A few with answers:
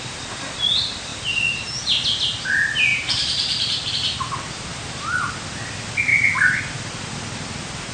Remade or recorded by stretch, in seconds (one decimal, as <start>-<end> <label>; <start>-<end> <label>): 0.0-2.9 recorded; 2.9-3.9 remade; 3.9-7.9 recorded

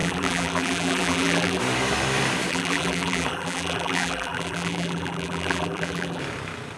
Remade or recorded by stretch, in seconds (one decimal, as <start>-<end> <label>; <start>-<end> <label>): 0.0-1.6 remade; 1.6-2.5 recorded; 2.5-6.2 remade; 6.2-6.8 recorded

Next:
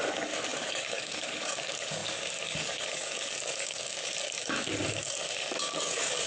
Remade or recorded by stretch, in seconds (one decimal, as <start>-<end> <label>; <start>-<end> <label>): 0.0-6.3 remade

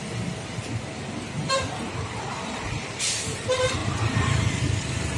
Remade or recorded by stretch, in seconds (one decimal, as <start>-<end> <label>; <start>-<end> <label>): 0.0-3.8 recorded; 3.8-5.2 remade